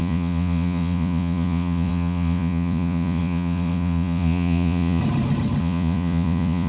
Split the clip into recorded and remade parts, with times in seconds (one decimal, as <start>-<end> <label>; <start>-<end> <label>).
0.0-5.0 remade; 5.0-5.6 recorded; 5.6-6.7 remade